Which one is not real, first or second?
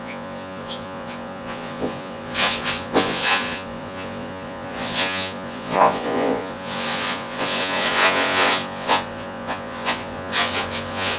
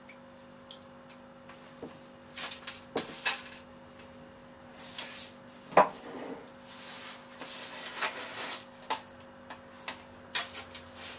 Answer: first